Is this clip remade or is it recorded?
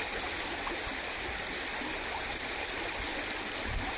recorded